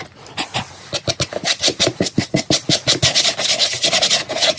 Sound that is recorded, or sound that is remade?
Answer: recorded